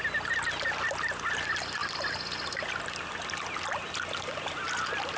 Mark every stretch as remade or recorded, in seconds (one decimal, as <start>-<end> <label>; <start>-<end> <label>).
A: 0.0-5.2 recorded